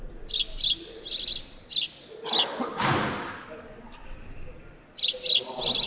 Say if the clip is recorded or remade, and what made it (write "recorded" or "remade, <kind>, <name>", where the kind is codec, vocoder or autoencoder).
recorded